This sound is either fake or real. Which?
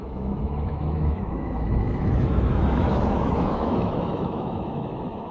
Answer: fake